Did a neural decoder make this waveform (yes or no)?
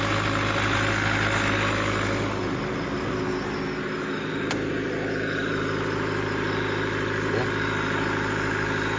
no